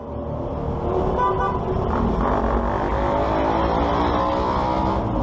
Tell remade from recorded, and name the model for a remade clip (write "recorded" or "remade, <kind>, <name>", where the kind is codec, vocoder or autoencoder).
recorded